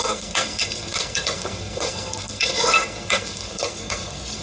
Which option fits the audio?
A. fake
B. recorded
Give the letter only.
A